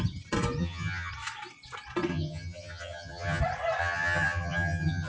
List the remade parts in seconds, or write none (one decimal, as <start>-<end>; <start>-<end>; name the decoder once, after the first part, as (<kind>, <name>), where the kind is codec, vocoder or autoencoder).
0.6-1.1 (vocoder, HiFi-GAN); 2.1-3.4; 3.8-5.1